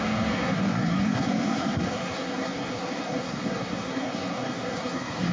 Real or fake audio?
fake